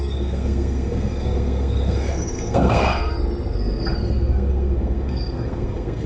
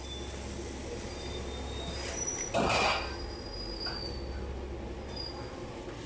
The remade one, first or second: first